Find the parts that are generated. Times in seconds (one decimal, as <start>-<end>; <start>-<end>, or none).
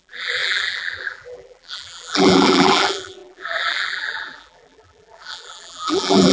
0.0-6.3